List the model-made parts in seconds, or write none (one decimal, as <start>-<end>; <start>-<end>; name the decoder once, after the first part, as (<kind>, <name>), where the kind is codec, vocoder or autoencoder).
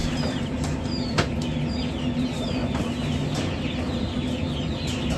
none